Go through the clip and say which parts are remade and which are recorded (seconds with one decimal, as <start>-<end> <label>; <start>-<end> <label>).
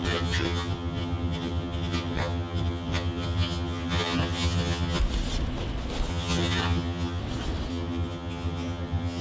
0.0-5.0 remade; 5.0-6.1 recorded; 6.1-7.2 remade; 7.2-7.7 recorded; 7.7-9.2 remade